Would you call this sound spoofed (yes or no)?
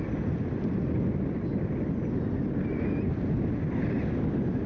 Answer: no